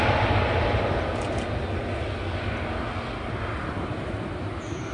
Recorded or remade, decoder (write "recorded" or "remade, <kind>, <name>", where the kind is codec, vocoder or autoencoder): recorded